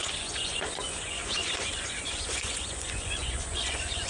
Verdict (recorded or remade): remade